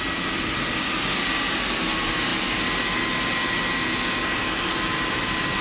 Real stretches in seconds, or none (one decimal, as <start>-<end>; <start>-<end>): 0.0-5.6